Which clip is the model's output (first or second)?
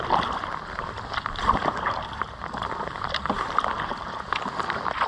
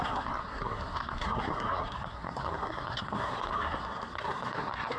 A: second